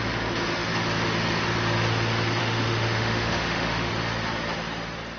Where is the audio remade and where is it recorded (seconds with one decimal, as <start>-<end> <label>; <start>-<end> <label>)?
0.0-2.4 recorded; 2.4-3.9 remade; 3.9-5.2 recorded

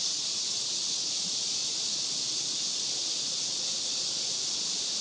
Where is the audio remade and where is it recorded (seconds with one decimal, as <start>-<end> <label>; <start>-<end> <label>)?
0.0-1.6 remade; 1.6-4.6 recorded; 4.6-5.0 remade

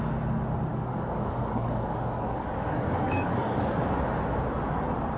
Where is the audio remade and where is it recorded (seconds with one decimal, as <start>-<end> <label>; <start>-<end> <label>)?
0.0-0.7 recorded; 0.7-3.8 remade; 3.8-5.2 recorded

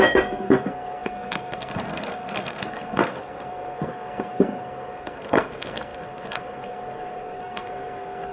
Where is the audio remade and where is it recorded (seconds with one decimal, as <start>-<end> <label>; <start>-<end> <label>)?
0.0-8.3 remade

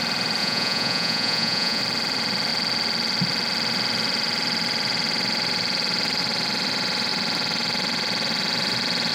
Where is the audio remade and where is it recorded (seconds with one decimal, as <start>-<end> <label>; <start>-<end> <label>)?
0.0-0.4 recorded; 0.4-1.8 remade; 1.8-9.1 recorded

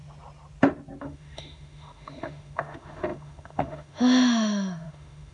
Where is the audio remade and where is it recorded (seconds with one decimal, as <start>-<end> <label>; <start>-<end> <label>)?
0.0-1.0 recorded; 1.0-5.3 remade

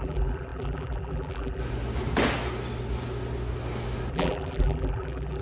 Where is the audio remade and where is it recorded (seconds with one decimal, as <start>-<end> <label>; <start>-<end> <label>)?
0.0-1.6 remade; 1.6-4.1 recorded; 4.1-5.4 remade

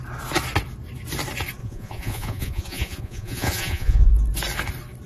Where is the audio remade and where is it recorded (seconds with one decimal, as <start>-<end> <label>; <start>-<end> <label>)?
0.0-1.6 recorded; 1.6-4.1 remade; 4.1-5.1 recorded